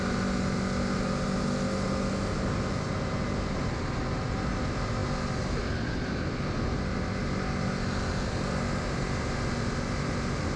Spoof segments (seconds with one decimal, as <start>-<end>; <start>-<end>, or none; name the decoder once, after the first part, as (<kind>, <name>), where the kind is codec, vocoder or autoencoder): none